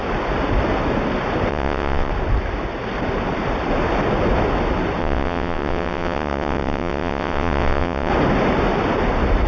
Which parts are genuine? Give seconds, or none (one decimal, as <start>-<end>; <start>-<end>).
0.0-1.5; 2.1-5.0; 8.1-9.5

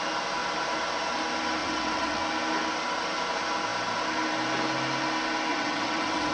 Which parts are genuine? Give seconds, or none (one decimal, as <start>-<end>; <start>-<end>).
0.0-1.6; 2.2-5.5

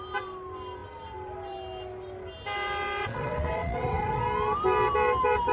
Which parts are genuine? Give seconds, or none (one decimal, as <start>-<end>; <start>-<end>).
0.0-3.0; 4.2-5.5